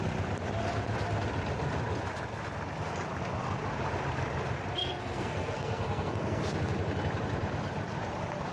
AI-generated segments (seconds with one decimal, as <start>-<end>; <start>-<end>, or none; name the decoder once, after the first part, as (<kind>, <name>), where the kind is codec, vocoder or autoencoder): 4.8-6.4 (codec, SNAC)